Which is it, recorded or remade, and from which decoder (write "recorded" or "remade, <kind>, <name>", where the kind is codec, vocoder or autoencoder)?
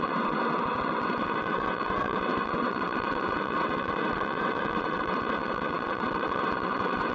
remade, vocoder, WaveNeXt